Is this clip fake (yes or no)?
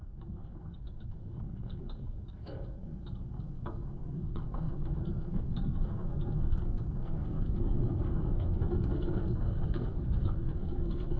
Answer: yes